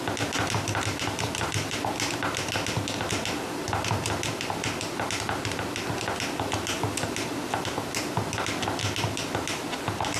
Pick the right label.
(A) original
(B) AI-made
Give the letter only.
A